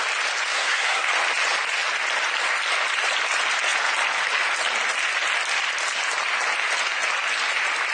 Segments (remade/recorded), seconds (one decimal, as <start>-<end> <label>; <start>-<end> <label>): 0.0-0.5 recorded; 0.5-1.1 remade; 1.1-7.9 recorded